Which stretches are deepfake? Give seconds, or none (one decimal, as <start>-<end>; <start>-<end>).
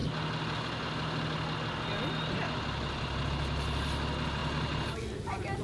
none